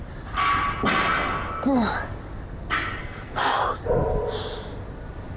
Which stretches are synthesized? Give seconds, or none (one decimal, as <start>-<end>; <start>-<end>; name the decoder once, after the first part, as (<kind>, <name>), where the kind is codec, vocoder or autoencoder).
3.0-3.6 (codec, SNAC)